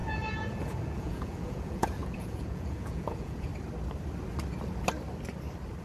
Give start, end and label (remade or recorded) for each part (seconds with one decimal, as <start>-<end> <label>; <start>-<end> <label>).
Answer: 0.0-3.5 remade; 3.5-5.8 recorded

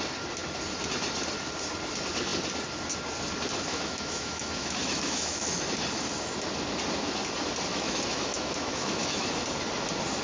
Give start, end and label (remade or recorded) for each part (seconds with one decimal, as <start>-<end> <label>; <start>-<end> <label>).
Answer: 0.0-3.7 recorded; 3.7-5.6 remade; 5.6-7.7 recorded; 7.7-9.3 remade; 9.3-10.2 recorded

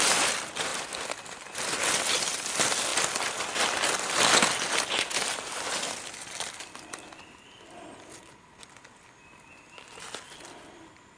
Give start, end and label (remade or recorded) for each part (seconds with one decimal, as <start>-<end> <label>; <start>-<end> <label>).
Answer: 0.0-11.2 recorded

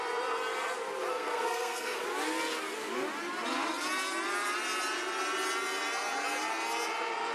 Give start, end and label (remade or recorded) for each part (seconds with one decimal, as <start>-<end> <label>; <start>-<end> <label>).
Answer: 0.0-1.1 recorded; 1.1-2.0 remade; 2.0-7.3 recorded

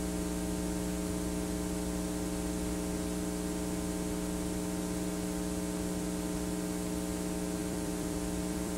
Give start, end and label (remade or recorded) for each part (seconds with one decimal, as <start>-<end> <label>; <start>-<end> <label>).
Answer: 0.0-7.6 recorded; 7.6-8.8 remade

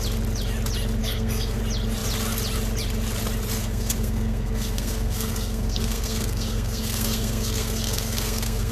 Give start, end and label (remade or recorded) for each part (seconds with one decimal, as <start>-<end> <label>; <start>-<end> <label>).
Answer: 0.0-1.0 recorded; 1.0-1.6 remade; 1.6-3.6 recorded; 3.6-8.7 remade

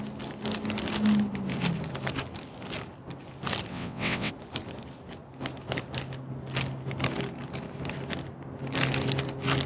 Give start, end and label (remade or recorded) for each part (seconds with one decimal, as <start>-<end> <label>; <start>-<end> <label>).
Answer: 0.0-3.7 recorded; 3.7-4.3 remade; 4.3-9.7 recorded